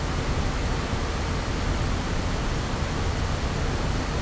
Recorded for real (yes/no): yes